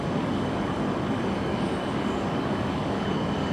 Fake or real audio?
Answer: fake